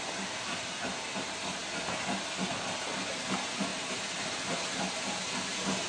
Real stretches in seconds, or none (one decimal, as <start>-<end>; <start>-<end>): 0.0-5.9